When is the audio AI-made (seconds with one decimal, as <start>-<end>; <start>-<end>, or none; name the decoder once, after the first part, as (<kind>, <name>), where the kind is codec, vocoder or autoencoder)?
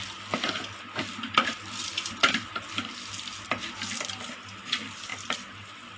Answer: none